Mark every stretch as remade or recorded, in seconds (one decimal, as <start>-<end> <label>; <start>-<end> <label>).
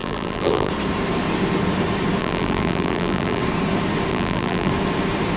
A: 0.0-0.7 remade; 0.7-2.2 recorded; 2.2-3.4 remade; 3.4-4.1 recorded; 4.1-4.7 remade; 4.7-5.4 recorded